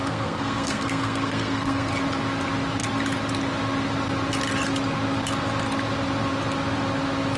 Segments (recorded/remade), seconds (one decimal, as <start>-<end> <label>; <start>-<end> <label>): 0.0-1.9 remade; 1.9-7.4 recorded